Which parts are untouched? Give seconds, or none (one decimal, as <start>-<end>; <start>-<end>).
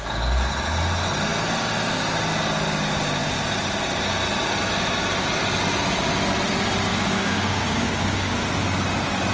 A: 0.0-6.9; 8.4-9.3